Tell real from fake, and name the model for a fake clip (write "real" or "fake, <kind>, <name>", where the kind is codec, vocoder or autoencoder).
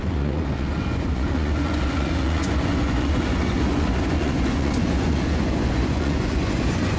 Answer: fake, vocoder, Vocos